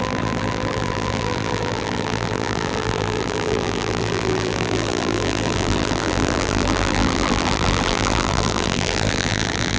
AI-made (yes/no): yes